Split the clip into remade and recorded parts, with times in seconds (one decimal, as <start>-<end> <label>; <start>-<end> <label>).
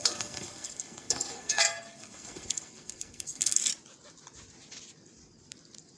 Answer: 0.0-3.7 remade; 3.7-6.0 recorded